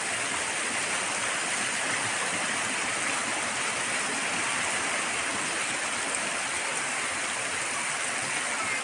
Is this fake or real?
real